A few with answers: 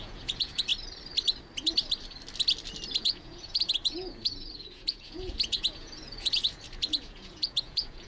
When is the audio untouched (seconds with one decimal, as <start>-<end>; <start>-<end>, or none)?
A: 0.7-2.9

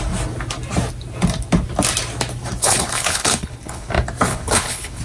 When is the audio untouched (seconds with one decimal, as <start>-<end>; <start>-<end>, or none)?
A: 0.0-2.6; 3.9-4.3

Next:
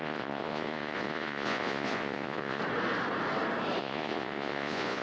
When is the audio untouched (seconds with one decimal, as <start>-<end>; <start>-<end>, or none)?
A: 2.6-3.8